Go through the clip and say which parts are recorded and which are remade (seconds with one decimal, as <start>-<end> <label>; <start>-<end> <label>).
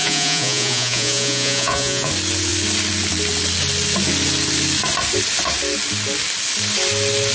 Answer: 0.0-2.1 remade; 2.1-7.3 recorded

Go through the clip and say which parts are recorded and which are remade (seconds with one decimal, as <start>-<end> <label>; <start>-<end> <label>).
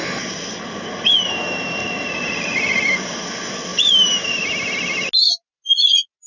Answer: 0.0-6.3 recorded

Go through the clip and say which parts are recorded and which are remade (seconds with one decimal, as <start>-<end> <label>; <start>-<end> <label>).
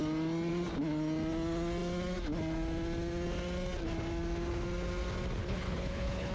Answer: 0.0-5.4 recorded; 5.4-6.3 remade